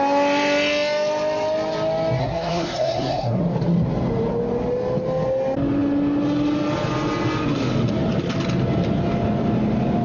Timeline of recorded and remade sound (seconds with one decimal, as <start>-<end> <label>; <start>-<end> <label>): 0.0-2.2 recorded; 2.2-3.4 remade; 3.4-10.0 recorded